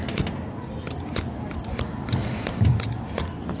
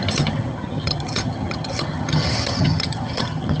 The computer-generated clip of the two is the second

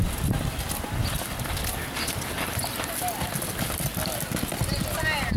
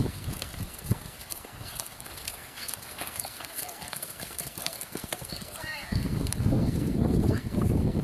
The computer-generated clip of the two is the second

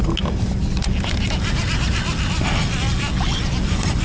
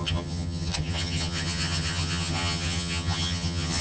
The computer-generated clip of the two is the second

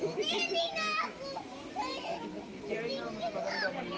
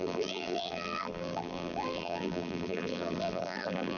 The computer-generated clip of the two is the second